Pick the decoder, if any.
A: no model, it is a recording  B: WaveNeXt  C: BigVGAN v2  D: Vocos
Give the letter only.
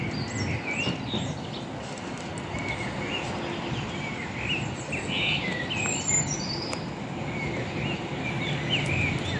A